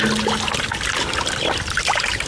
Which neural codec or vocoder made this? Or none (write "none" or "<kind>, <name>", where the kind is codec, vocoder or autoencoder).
none